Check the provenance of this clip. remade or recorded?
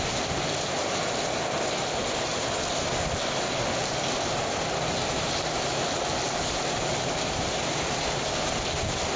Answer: recorded